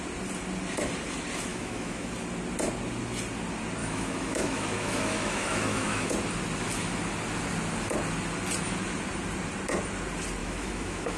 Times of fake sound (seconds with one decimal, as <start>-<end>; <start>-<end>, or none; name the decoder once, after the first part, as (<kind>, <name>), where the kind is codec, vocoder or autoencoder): 1.5-2.1 (autoencoder, DAC-VAE); 3.8-6.1; 10.4-11.2